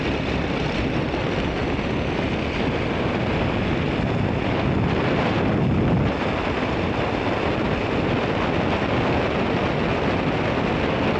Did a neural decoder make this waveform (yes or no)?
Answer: no